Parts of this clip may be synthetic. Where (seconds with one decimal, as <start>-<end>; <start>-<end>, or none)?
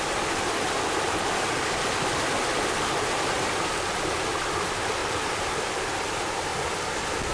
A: 5.0-6.1